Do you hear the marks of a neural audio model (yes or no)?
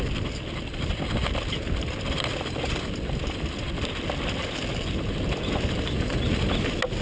no